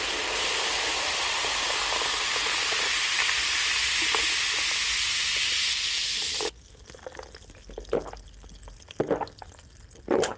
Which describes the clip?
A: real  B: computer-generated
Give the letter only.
A